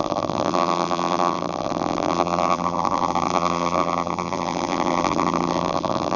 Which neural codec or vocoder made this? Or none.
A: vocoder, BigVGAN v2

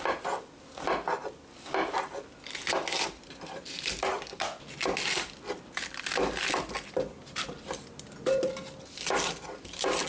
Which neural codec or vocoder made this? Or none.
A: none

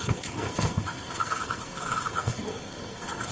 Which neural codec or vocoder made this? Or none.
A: codec, SNAC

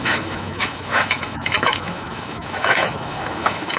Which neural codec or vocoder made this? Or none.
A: autoencoder, DAC-VAE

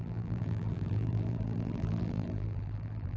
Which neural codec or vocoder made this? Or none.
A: vocoder, BigVGAN v2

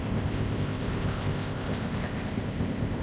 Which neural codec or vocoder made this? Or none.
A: codec, ZipCodec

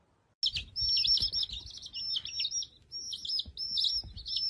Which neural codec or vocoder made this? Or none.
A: none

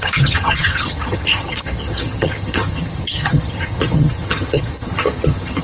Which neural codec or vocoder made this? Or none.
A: vocoder, HiFi-GAN